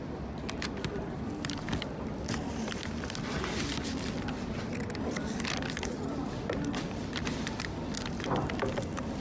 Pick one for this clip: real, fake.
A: fake